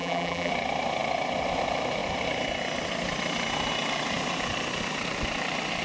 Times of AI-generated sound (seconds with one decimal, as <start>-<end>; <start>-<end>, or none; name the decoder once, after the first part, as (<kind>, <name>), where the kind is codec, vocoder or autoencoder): 0.0-0.5 (vocoder, BigVGAN v2)